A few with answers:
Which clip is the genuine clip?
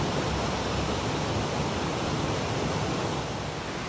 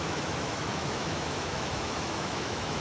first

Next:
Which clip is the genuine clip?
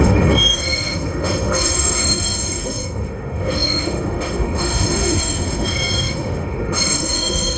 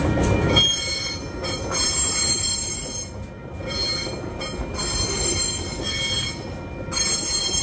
second